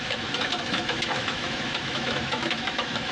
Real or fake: fake